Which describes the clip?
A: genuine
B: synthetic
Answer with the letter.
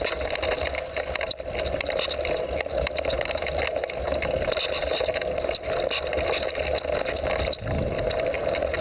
A